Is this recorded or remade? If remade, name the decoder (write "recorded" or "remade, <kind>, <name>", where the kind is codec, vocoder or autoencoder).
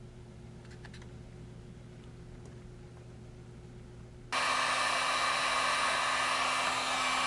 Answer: recorded